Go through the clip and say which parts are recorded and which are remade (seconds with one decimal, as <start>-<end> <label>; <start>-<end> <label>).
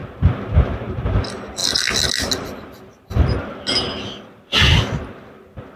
0.0-5.8 recorded